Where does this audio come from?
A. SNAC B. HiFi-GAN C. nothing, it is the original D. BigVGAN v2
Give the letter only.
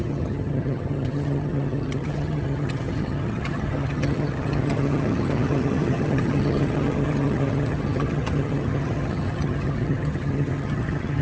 B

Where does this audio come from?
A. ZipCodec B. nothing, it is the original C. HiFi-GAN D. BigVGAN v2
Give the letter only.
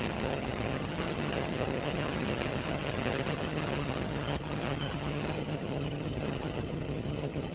C